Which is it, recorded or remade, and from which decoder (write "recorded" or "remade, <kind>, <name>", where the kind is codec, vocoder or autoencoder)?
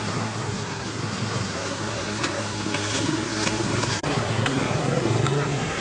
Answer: remade, codec, SNAC